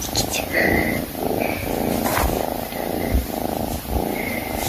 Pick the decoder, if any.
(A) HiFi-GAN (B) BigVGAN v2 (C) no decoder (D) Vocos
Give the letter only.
B